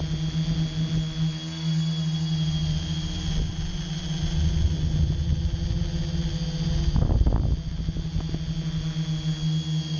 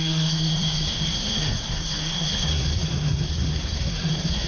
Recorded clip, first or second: first